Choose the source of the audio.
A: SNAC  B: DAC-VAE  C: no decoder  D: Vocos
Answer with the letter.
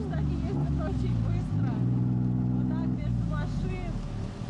C